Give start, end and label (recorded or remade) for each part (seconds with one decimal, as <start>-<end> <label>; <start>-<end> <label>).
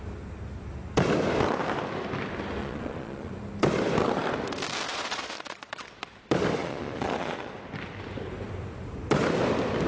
0.0-2.6 recorded; 2.6-3.3 remade; 3.3-4.9 recorded; 4.9-5.8 remade; 5.8-6.6 recorded; 6.6-7.5 remade; 7.5-9.9 recorded